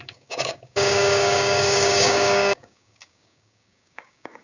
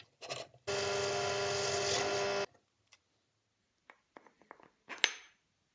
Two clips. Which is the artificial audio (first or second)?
first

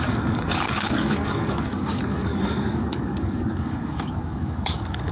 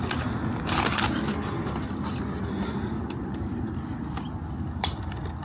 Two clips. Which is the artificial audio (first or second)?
first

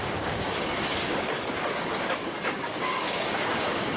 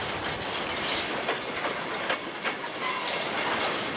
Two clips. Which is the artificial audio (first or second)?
first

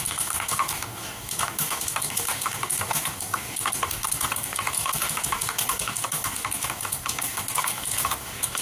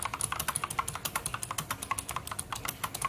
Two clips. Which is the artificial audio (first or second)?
first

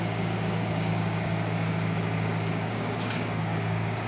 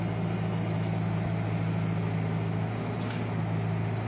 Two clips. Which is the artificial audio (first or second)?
first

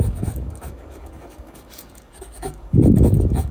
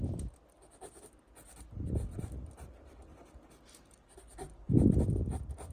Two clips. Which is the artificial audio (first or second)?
first